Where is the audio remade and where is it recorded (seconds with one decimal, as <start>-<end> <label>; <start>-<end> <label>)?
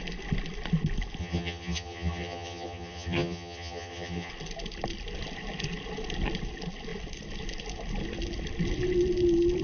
0.0-1.2 recorded; 1.2-4.3 remade; 4.3-9.6 recorded